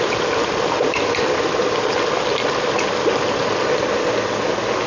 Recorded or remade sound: recorded